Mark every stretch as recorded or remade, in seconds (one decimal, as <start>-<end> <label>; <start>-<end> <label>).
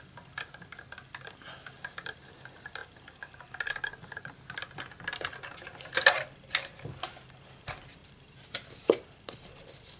0.0-8.0 recorded; 8.0-10.0 remade